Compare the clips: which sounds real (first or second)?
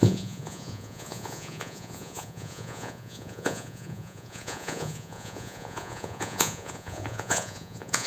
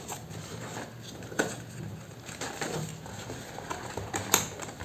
second